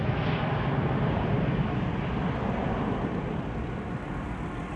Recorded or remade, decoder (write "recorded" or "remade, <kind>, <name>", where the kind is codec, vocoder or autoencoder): recorded